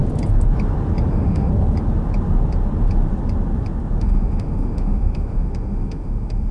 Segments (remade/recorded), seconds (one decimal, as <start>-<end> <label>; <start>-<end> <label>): 0.0-1.1 recorded; 1.1-1.5 remade; 1.5-4.0 recorded; 4.0-6.5 remade